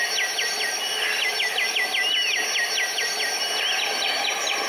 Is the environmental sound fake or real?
real